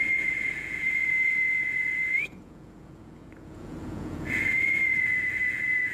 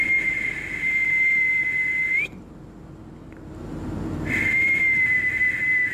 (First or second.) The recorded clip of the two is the second